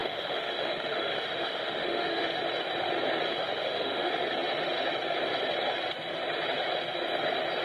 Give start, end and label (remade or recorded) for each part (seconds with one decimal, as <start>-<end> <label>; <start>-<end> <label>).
0.0-2.4 remade; 2.4-3.3 recorded; 3.3-4.1 remade; 4.1-7.6 recorded